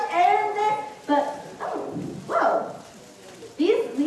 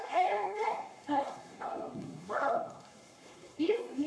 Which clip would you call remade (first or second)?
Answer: second